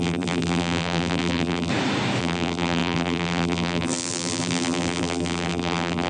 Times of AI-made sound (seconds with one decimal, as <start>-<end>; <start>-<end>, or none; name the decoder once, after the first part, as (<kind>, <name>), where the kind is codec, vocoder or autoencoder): 0.0-1.7 (vocoder, BigVGAN v2); 2.2-6.1